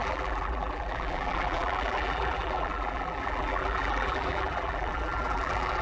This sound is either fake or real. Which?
fake